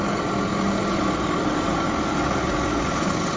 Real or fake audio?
real